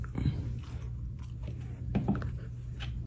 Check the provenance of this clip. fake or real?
real